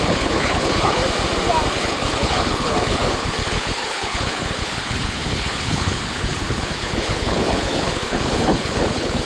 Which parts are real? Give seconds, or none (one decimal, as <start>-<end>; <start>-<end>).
1.0-1.7

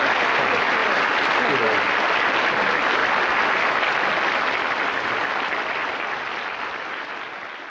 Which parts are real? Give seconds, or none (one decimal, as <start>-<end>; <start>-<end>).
0.0-7.7

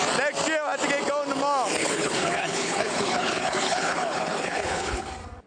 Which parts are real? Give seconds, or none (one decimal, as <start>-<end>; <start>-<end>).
0.0-1.8; 5.1-5.5

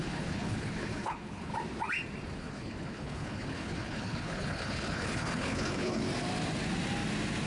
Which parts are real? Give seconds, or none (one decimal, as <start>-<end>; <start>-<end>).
1.5-2.4; 6.0-7.5

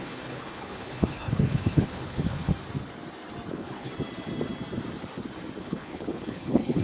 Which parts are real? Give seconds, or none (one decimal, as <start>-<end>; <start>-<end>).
2.5-3.5; 3.9-5.6

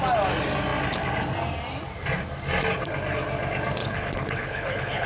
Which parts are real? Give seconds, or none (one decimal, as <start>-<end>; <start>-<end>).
0.0-3.8

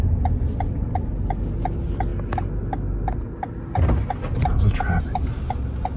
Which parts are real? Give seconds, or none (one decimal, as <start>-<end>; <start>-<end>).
0.0-6.0

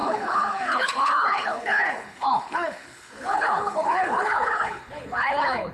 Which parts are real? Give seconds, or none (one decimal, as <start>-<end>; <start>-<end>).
none